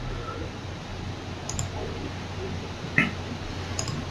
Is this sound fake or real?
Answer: real